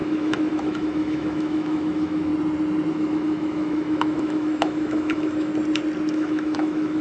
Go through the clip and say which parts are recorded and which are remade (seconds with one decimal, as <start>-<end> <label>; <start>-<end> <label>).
0.0-2.3 remade; 2.3-2.9 recorded; 2.9-5.5 remade; 5.5-6.1 recorded; 6.1-7.0 remade

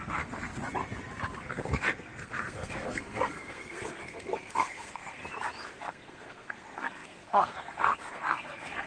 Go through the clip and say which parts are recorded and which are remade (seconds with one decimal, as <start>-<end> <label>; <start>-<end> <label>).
0.0-0.5 remade; 0.5-1.4 recorded; 1.4-5.2 remade; 5.2-5.8 recorded; 5.8-8.9 remade

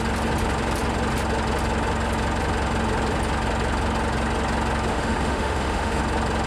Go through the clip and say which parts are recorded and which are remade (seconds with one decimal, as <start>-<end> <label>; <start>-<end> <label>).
0.0-4.9 recorded; 4.9-6.0 remade; 6.0-6.5 recorded

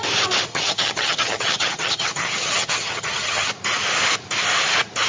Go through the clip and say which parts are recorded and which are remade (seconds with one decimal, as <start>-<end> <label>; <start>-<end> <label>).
0.0-0.5 recorded; 0.5-3.5 remade; 3.5-5.1 recorded

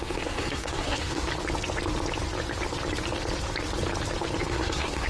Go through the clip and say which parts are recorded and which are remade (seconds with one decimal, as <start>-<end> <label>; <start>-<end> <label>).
0.0-1.3 remade; 1.3-4.4 recorded; 4.4-5.1 remade

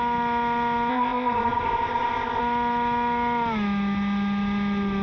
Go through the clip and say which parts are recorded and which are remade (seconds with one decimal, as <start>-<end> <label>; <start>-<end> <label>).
0.0-0.9 recorded; 0.9-2.4 remade; 2.4-5.0 recorded

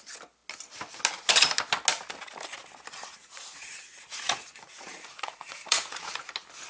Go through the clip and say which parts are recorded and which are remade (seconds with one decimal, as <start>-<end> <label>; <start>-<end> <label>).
0.0-3.1 recorded; 3.1-6.2 remade; 6.2-6.7 recorded

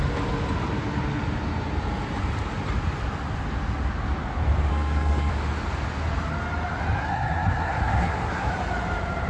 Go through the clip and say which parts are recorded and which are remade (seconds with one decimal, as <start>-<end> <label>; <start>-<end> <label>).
0.0-4.7 recorded; 4.7-5.3 remade; 5.3-7.0 recorded; 7.0-8.5 remade; 8.5-9.3 recorded